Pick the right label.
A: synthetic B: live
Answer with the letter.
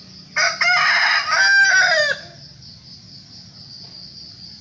B